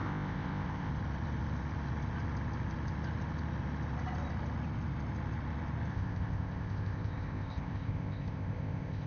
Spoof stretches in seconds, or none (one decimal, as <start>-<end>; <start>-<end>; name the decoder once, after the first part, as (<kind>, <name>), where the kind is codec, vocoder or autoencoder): 0.0-0.9 (codec, ZipCodec); 5.9-9.1